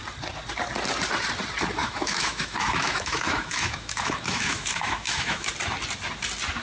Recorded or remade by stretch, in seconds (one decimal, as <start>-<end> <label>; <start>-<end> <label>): 0.0-1.8 recorded; 1.8-5.5 remade; 5.5-6.6 recorded